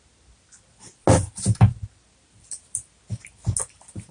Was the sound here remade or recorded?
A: recorded